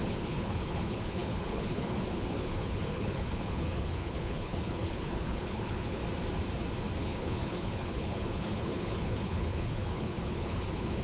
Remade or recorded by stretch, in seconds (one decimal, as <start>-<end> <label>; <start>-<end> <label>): 0.0-6.0 remade; 6.0-7.0 recorded; 7.0-11.0 remade